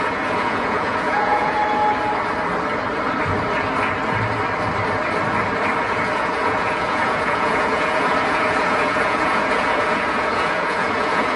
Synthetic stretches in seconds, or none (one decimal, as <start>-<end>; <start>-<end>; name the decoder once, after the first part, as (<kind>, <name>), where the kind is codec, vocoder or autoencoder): 0.0-1.6 (vocoder, Vocos); 5.8-11.4